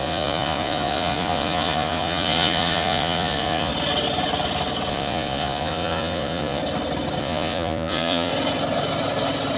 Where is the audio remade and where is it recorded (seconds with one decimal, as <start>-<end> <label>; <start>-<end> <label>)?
0.0-3.7 remade; 3.7-4.9 recorded; 4.9-6.6 remade; 6.6-7.2 recorded; 7.2-8.3 remade; 8.3-9.6 recorded